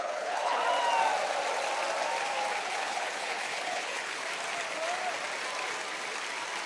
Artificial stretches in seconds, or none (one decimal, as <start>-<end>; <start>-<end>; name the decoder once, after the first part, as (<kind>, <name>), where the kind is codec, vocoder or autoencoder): 0.0-0.6 (codec, HILCodec); 2.6-4.2